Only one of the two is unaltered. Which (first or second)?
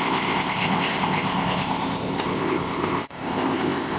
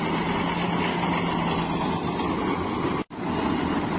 second